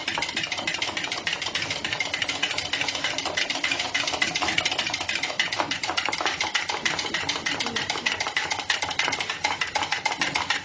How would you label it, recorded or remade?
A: remade